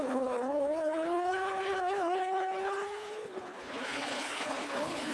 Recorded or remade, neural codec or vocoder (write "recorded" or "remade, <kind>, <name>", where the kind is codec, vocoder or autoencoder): remade, codec, HILCodec